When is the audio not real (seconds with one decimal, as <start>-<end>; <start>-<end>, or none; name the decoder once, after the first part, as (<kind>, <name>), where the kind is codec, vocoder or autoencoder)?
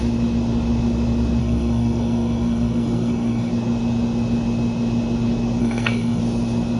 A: 1.4-3.5 (codec, SNAC); 5.6-6.2